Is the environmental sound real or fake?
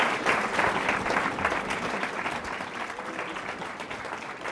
real